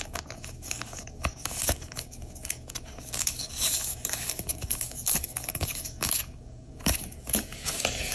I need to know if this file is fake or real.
fake